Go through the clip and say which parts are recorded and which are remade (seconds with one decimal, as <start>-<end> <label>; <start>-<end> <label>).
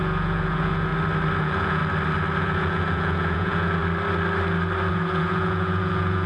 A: 0.0-0.9 remade; 0.9-1.4 recorded; 1.4-1.8 remade; 1.8-2.4 recorded; 2.4-3.8 remade; 3.8-4.9 recorded; 4.9-6.3 remade